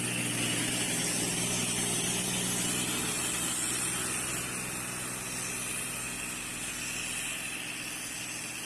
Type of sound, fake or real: real